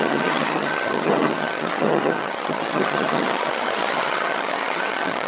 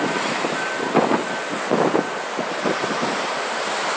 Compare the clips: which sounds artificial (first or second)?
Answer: first